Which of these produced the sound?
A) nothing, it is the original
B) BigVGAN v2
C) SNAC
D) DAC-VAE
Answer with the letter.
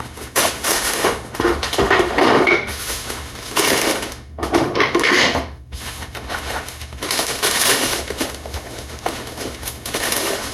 D